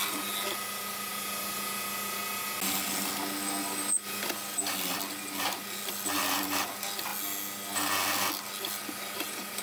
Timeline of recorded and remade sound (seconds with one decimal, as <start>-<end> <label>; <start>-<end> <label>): 0.0-9.6 recorded